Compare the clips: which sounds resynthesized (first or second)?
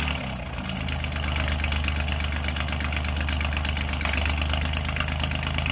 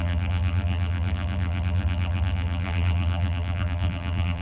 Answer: second